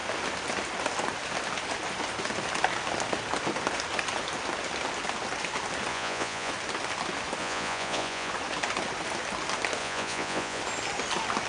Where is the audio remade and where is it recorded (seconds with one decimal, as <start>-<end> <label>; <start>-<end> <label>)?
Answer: 0.0-5.9 recorded; 5.9-6.5 remade; 6.5-7.4 recorded; 7.4-8.3 remade; 8.3-9.8 recorded; 9.8-10.6 remade; 10.6-11.5 recorded